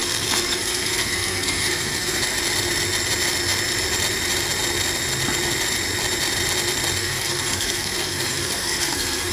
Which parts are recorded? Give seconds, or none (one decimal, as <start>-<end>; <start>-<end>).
2.2-7.0